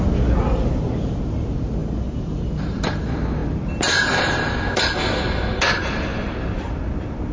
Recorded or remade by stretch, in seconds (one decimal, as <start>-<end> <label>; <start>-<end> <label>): 0.0-1.8 recorded; 1.8-2.8 remade; 2.8-6.1 recorded; 6.1-6.7 remade; 6.7-7.3 recorded